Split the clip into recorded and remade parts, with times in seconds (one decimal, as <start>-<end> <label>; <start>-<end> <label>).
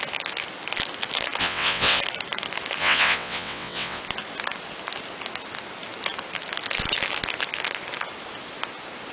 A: 0.0-1.4 recorded; 1.4-2.0 remade; 2.0-2.8 recorded; 2.8-4.0 remade; 4.0-9.1 recorded